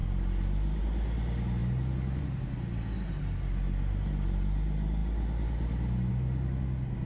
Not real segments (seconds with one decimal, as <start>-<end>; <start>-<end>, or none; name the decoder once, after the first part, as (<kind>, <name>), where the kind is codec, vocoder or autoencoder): none